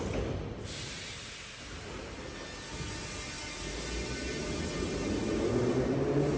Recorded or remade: recorded